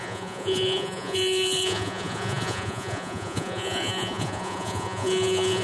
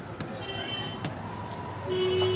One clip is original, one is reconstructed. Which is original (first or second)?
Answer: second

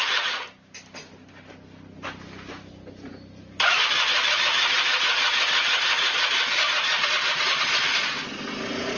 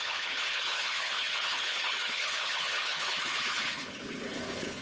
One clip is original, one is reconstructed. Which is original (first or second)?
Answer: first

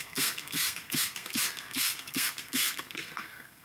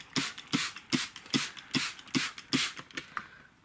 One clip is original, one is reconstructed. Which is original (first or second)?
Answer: second